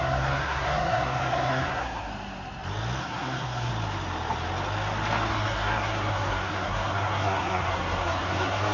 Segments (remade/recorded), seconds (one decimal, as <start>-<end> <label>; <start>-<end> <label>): 0.0-2.1 remade; 2.1-3.0 recorded; 3.0-3.7 remade; 3.7-5.3 recorded; 5.3-8.7 remade